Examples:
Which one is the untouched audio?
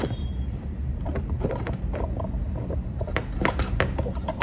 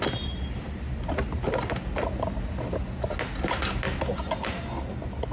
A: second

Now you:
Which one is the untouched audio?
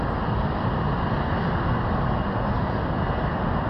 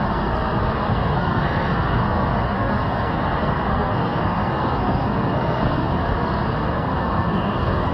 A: first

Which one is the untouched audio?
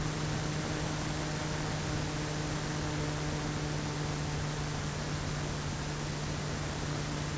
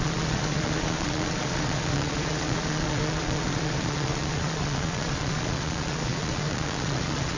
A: first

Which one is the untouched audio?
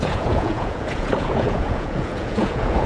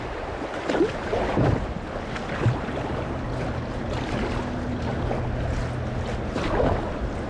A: second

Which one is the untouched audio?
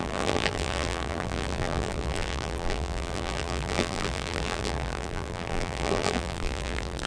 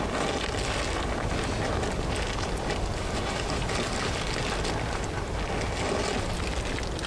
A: second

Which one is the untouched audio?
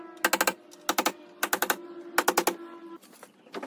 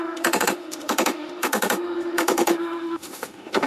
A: first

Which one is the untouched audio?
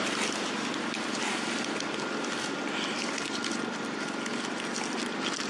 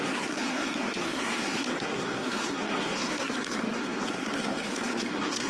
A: first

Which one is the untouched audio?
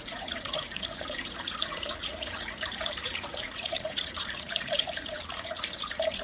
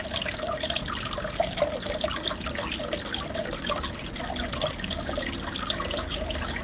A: second